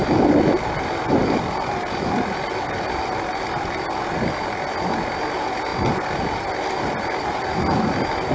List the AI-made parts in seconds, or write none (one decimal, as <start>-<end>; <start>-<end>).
none

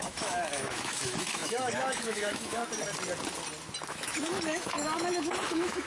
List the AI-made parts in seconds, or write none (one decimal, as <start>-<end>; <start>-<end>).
0.0-2.6; 3.9-5.9

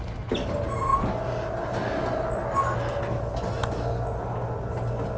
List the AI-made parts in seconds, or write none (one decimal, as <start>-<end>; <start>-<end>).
none

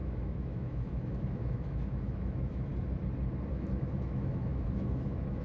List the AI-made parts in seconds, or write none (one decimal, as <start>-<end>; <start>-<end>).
0.0-2.7; 3.5-5.4

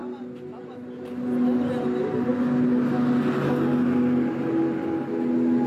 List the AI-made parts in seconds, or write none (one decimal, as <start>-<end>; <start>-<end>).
none